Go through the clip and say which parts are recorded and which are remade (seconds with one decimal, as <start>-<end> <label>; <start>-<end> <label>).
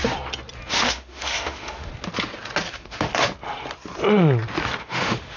0.0-0.7 recorded; 0.7-1.9 remade; 1.9-2.7 recorded; 2.7-3.1 remade; 3.1-4.8 recorded; 4.8-5.4 remade